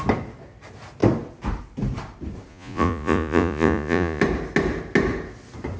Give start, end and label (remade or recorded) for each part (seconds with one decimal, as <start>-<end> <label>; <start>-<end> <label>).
0.0-2.5 recorded; 2.5-4.2 remade; 4.2-5.8 recorded